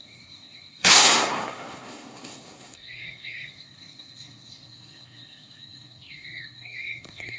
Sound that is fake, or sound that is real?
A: fake